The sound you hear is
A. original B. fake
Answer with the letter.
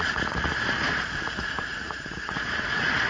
B